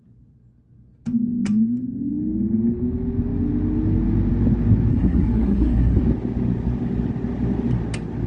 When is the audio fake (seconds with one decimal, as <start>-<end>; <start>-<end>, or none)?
4.9-6.0